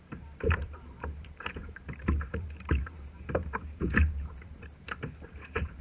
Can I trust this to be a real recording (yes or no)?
no